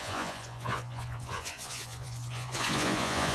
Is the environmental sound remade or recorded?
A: remade